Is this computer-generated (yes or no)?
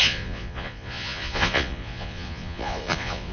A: yes